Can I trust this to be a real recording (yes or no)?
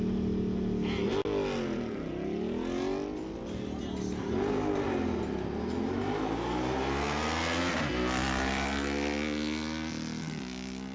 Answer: yes